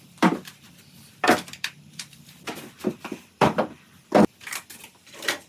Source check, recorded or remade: remade